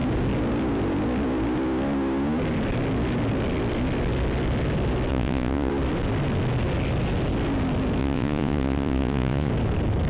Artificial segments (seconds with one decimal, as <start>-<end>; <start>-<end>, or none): 5.1-5.7; 8.0-9.5